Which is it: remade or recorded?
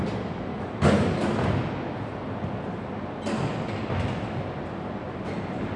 recorded